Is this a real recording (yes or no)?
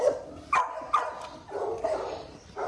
yes